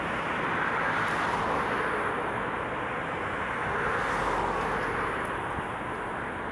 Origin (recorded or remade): recorded